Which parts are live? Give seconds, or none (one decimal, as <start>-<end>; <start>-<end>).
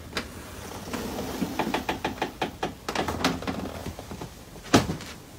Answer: 0.0-3.8; 4.9-5.4